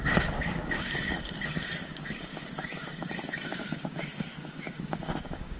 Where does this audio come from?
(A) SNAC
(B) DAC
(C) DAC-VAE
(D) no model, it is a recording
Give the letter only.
B